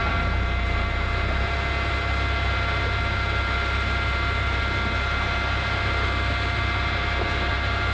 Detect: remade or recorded recorded